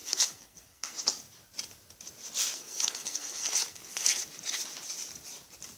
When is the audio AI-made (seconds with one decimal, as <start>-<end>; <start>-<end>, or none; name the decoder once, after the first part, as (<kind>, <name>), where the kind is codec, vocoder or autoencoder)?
0.0-1.1 (codec, SNAC); 2.4-4.2